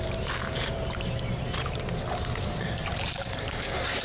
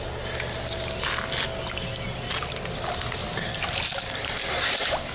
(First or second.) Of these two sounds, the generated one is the first